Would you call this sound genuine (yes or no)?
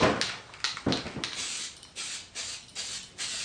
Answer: yes